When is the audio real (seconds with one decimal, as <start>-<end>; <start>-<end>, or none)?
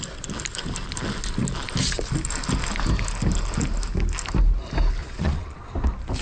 0.0-5.0; 5.7-6.2